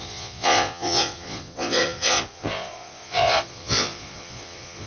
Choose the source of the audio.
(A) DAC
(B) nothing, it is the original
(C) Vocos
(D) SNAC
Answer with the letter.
C